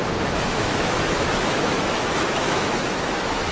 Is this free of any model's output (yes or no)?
no